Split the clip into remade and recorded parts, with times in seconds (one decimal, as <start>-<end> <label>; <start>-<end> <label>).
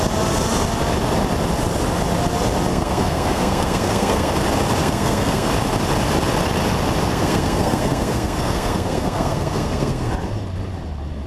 0.0-2.7 recorded; 2.7-4.3 remade; 4.3-4.8 recorded; 4.8-5.5 remade; 5.5-7.1 recorded; 7.1-10.1 remade; 10.1-11.3 recorded